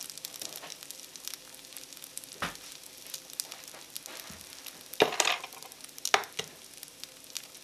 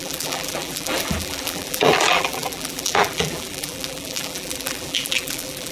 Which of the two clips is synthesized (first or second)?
second